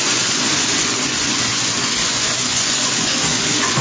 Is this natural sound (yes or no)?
no